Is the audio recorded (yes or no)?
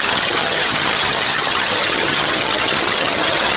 no